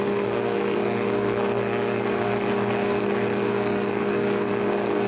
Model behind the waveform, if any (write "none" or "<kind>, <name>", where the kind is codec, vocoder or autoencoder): codec, SNAC